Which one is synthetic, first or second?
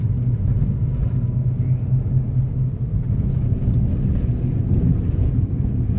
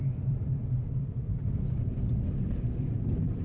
second